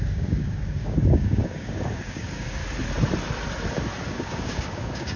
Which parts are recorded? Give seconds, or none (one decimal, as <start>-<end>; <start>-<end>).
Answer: 2.6-4.1